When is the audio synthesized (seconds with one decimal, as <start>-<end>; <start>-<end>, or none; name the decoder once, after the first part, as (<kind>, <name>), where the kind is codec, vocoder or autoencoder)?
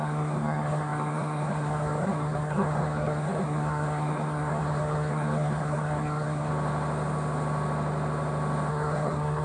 0.0-6.5 (codec, SNAC); 8.7-9.4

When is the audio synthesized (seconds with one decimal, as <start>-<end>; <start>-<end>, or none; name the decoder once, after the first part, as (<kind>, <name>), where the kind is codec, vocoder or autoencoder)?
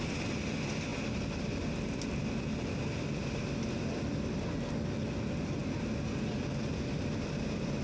none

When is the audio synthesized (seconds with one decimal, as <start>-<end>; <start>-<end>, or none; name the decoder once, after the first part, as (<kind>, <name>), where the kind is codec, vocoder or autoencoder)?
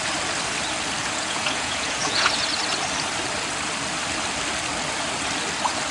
1.0-2.3 (vocoder, Vocos)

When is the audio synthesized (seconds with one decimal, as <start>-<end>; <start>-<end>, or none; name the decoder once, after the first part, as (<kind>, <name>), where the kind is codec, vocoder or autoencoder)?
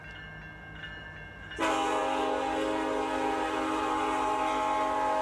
none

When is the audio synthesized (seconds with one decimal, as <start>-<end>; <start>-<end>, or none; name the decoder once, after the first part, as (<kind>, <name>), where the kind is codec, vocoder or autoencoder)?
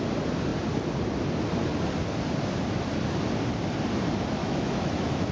4.4-5.3 (autoencoder, DAC-VAE)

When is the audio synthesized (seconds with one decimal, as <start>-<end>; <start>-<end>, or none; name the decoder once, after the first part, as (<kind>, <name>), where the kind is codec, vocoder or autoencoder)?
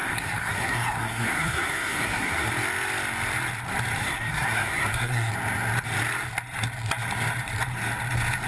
0.0-2.5 (codec, SNAC); 4.0-5.3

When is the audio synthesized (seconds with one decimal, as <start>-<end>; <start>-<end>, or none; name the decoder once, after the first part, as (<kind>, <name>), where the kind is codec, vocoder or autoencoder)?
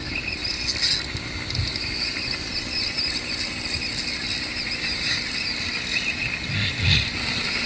none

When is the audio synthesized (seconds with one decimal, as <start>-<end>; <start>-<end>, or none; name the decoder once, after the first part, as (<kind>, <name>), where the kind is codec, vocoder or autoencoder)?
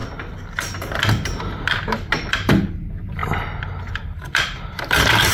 2.3-3.2 (vocoder, BigVGAN v2); 3.9-5.3